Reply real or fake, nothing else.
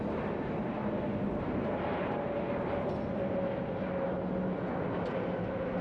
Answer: real